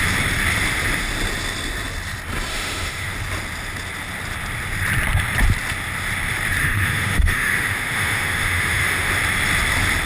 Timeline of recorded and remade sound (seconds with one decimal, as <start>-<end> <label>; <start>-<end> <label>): 0.0-2.5 recorded; 2.5-3.1 remade; 3.1-6.6 recorded; 6.6-9.1 remade; 9.1-10.1 recorded